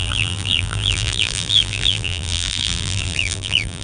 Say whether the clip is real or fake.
fake